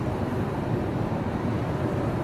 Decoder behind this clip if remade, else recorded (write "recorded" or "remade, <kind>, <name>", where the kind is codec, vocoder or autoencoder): recorded